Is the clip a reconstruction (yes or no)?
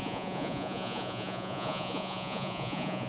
yes